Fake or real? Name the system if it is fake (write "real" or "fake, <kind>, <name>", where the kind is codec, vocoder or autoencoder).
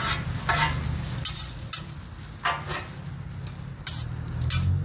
real